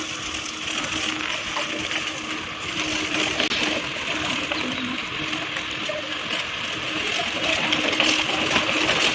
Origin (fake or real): real